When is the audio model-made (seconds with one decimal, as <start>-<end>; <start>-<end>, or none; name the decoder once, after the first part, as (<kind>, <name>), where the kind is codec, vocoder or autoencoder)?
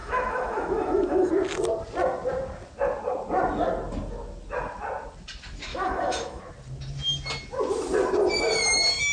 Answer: 0.0-1.3 (autoencoder, DAC-VAE); 5.7-6.4